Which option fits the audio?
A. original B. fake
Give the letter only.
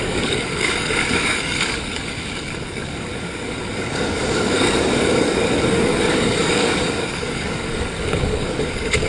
B